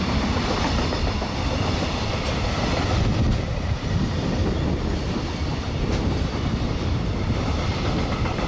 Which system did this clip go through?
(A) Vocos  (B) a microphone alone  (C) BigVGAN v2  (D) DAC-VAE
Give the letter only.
B